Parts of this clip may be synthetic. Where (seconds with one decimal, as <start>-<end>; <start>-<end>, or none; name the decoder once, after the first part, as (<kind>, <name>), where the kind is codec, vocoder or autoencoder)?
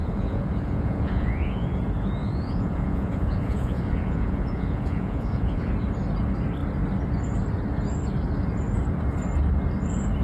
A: 0.0-1.8 (vocoder, Vocos); 2.2-5.7